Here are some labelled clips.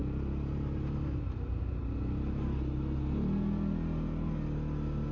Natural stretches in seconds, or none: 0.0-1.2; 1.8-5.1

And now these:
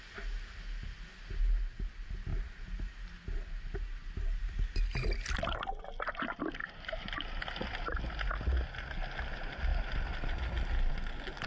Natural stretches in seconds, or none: 0.0-6.6; 7.4-11.5

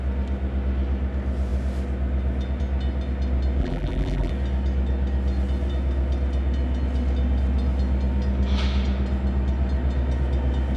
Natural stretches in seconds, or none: 0.0-3.6; 4.3-10.8

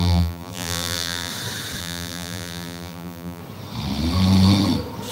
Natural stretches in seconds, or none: 1.3-1.8; 3.4-5.1

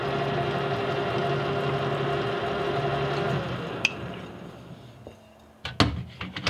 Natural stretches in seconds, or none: 0.0-6.5

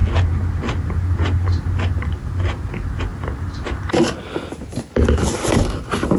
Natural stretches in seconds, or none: 0.0-3.1; 5.5-6.2

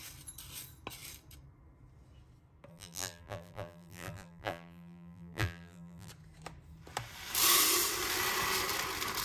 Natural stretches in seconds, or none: 0.0-2.7; 6.1-9.2